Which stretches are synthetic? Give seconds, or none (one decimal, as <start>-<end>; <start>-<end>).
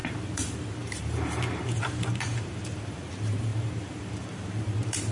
0.0-5.1